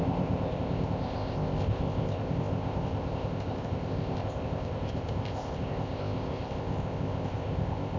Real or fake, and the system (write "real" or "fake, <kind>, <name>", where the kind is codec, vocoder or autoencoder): fake, codec, ZipCodec